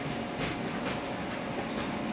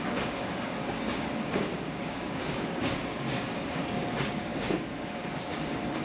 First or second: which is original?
first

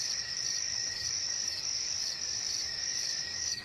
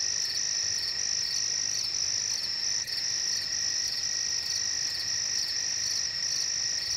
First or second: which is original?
second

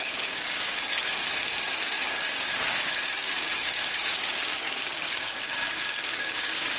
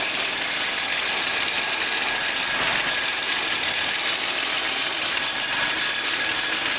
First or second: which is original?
second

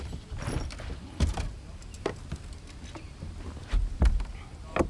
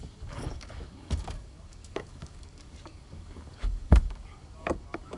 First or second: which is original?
first